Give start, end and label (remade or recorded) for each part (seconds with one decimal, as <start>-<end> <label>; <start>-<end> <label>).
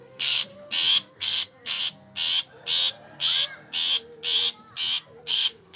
0.0-0.5 remade; 0.5-1.1 recorded; 1.1-1.8 remade; 1.8-5.3 recorded; 5.3-5.8 remade